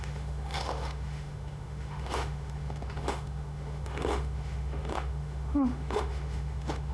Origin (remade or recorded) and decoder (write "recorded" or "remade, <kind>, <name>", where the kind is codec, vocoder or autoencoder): remade, autoencoder, DAC-VAE